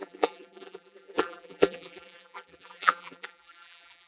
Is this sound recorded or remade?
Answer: remade